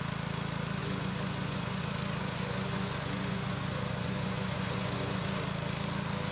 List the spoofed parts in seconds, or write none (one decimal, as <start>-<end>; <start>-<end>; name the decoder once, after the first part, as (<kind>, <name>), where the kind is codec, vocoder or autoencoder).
0.8-1.8 (vocoder, Vocos); 2.2-5.2